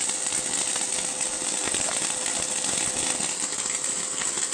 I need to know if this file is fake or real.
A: real